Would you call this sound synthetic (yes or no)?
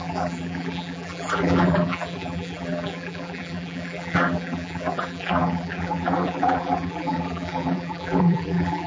yes